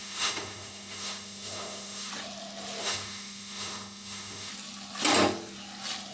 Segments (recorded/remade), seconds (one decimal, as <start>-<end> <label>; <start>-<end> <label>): 0.0-2.1 remade; 2.1-2.8 recorded; 2.8-4.5 remade; 4.5-6.1 recorded